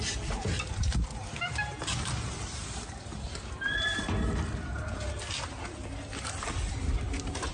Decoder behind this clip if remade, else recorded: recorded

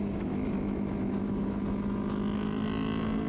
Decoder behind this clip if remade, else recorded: recorded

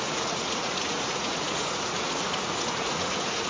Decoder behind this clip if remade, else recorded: remade, vocoder, Vocos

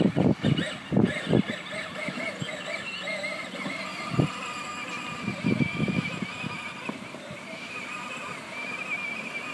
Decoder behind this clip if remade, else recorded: recorded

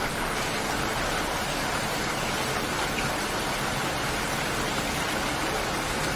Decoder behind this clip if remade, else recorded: recorded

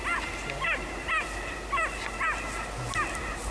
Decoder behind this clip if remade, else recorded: recorded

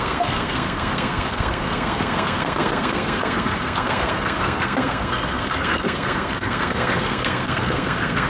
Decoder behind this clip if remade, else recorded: remade, codec, SNAC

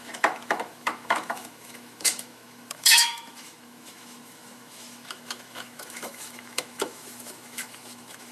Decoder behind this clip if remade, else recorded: remade, autoencoder, DAC-VAE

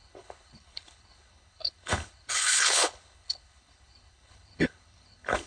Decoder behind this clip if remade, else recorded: remade, codec, HILCodec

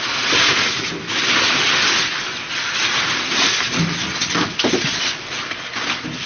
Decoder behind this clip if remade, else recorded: recorded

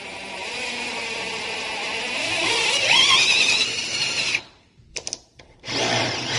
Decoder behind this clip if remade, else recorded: remade, vocoder, BigVGAN v2